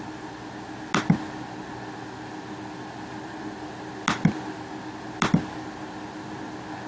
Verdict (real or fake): real